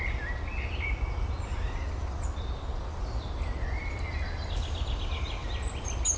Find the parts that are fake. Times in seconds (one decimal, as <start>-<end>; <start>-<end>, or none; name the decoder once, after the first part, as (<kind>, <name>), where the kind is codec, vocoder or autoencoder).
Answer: none